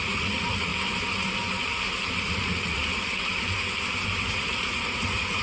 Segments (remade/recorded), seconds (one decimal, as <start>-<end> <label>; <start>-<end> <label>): 0.0-0.7 remade; 0.7-2.2 recorded; 2.2-2.8 remade; 2.8-4.3 recorded; 4.3-5.4 remade